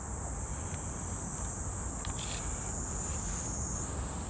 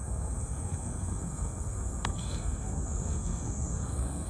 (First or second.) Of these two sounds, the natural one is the first